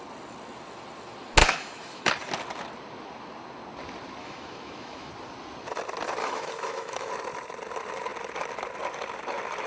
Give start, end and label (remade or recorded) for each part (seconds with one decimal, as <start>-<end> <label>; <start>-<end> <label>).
0.0-1.4 recorded; 1.4-2.1 remade; 2.1-4.2 recorded; 4.2-5.1 remade; 5.1-6.2 recorded; 6.2-7.1 remade; 7.1-9.7 recorded